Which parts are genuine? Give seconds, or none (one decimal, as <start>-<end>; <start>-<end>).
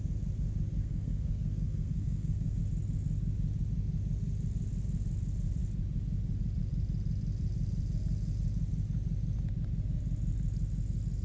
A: 0.0-0.8; 2.6-11.2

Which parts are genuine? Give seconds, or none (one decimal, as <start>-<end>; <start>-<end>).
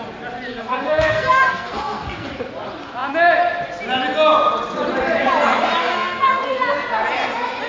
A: 0.0-0.5; 2.3-5.8; 6.4-7.7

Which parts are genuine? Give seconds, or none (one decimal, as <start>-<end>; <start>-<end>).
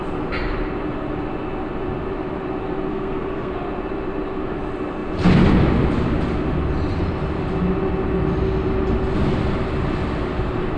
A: 0.0-2.9; 3.5-10.8